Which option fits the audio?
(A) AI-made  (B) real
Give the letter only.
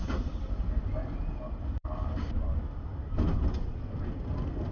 B